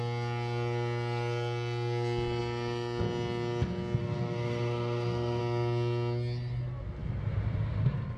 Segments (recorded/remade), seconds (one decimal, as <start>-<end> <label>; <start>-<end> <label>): 0.0-4.0 recorded; 4.0-5.4 remade; 5.4-8.2 recorded